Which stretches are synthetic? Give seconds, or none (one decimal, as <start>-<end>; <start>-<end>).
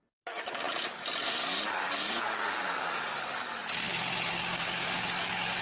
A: 0.9-3.5; 4.3-5.6